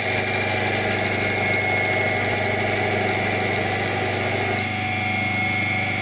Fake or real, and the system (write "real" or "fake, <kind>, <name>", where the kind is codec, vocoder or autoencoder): real